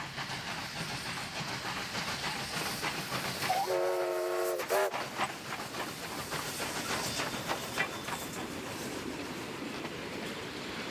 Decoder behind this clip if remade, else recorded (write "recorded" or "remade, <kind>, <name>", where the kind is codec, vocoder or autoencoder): recorded